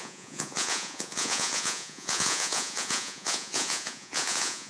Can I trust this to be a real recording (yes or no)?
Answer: no